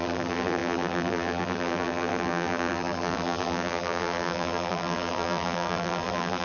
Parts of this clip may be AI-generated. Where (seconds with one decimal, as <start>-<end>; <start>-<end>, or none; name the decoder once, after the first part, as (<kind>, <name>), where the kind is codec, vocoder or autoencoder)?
0.0-6.4 (vocoder, BigVGAN v2)